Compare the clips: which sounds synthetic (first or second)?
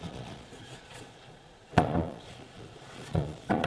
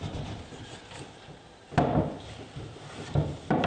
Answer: first